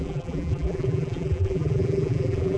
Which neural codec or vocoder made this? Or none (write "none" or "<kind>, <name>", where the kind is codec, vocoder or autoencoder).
vocoder, BigVGAN v2